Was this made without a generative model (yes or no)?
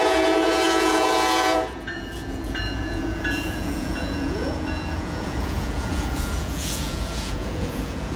no